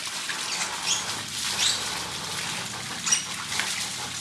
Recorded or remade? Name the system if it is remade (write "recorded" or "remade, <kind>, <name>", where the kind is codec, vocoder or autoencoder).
recorded